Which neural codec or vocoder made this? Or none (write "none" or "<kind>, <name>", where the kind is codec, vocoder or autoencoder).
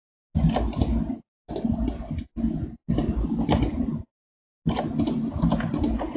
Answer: none